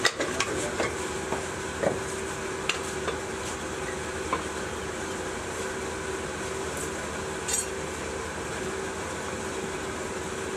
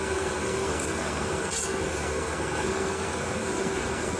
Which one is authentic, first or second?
first